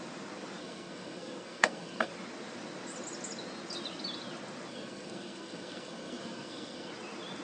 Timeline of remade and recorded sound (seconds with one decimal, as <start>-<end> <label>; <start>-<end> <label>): 0.0-0.6 recorded; 0.6-2.1 remade; 2.1-4.7 recorded; 4.7-6.9 remade; 6.9-7.4 recorded